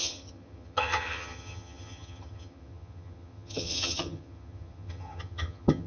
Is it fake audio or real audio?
fake